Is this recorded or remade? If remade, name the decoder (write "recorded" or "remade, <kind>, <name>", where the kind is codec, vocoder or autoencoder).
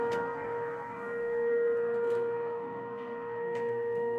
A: remade, codec, SNAC